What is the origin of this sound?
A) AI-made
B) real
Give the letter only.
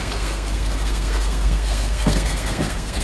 A